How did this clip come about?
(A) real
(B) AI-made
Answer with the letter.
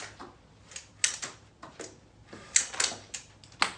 A